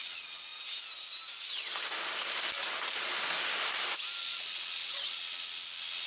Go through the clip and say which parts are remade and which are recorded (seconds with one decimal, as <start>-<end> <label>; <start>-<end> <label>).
0.0-0.5 remade; 0.5-4.2 recorded; 4.2-6.1 remade